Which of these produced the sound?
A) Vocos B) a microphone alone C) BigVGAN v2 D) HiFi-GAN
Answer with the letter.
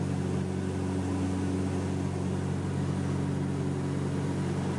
B